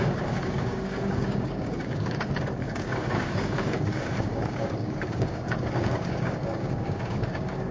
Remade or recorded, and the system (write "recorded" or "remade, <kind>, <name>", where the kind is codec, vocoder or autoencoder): remade, codec, DAC